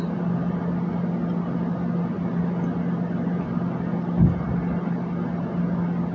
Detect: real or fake real